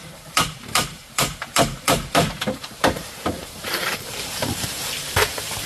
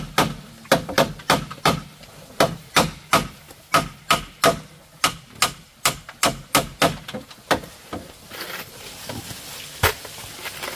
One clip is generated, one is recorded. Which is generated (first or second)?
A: first